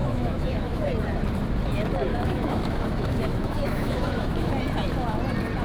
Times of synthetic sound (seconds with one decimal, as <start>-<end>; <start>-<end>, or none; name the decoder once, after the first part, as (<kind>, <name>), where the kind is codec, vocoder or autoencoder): 0.0-0.9 (autoencoder, DAC-VAE); 2.1-4.5